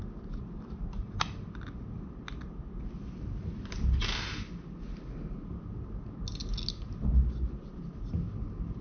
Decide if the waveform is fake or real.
real